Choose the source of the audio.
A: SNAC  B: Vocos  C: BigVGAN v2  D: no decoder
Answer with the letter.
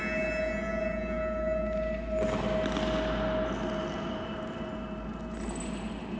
D